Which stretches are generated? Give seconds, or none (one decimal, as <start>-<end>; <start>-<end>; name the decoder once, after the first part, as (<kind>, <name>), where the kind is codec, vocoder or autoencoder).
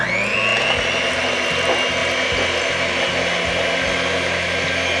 none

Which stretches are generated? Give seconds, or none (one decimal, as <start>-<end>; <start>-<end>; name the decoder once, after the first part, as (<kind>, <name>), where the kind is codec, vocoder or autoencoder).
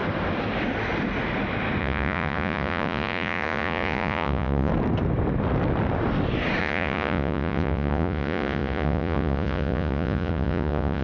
1.8-4.7 (vocoder, Vocos); 6.6-11.0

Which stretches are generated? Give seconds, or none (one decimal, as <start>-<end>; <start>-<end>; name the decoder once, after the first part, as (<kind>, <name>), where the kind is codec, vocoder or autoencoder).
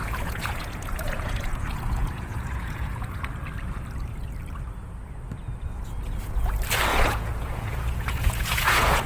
0.0-3.3 (vocoder, Vocos); 6.9-9.1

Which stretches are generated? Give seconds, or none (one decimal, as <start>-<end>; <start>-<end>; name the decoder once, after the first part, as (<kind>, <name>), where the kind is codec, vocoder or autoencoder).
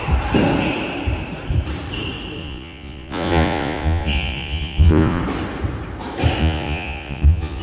2.4-5.2 (vocoder, Vocos); 6.4-7.6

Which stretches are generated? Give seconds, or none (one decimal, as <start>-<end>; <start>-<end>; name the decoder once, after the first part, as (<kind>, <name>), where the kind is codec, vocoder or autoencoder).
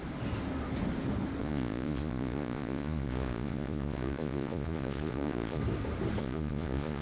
1.4-5.6 (vocoder, Vocos); 6.2-7.0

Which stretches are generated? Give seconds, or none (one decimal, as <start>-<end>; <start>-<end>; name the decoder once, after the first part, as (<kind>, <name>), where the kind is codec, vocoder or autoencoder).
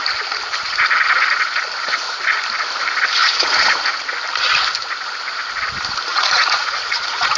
3.2-4.1 (vocoder, Vocos); 6.1-7.4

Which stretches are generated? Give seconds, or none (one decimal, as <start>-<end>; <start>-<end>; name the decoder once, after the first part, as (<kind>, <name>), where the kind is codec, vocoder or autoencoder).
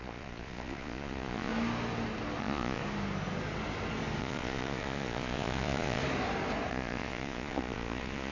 0.0-1.5 (vocoder, Vocos); 2.4-2.8; 4.2-6.0; 6.7-8.3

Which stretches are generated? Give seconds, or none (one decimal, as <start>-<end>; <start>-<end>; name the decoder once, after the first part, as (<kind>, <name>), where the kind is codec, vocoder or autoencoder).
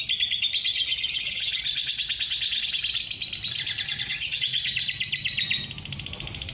0.7-2.8 (vocoder, Vocos); 3.9-4.7